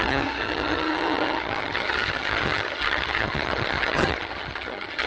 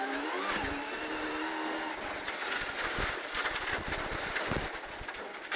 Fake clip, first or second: first